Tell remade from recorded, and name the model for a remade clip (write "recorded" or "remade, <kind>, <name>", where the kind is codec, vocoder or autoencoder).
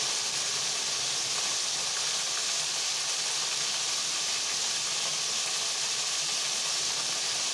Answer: recorded